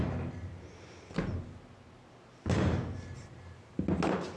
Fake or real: real